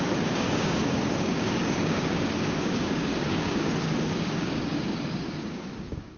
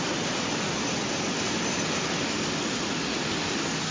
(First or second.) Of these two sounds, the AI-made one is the first